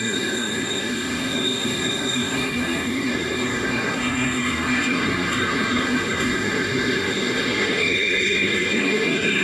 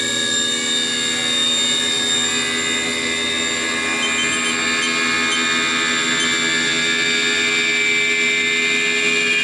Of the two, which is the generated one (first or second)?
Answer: first